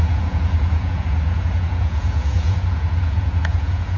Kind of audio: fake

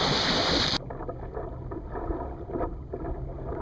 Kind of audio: real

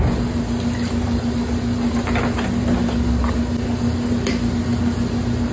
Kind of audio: real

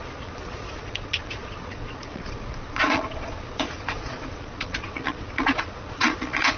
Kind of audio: fake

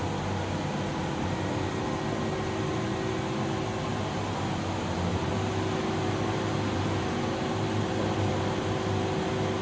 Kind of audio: real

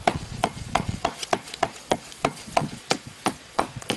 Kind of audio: fake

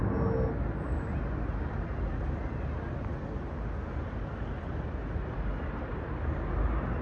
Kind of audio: real